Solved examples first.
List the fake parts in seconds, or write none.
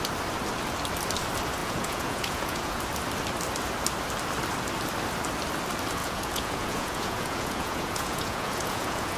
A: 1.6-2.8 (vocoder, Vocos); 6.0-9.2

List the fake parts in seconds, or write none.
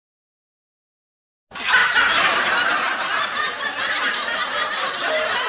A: 1.8-5.1 (vocoder, BigVGAN v2)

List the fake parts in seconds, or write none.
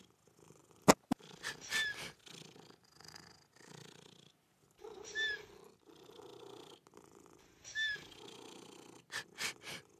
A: none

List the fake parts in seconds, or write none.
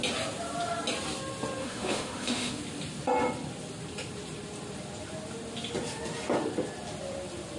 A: 1.6-2.6 (autoencoder, DAC-VAE)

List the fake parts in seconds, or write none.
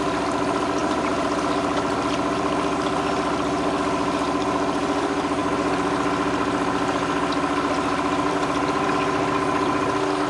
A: 0.8-1.4 (vocoder, BigVGAN v2)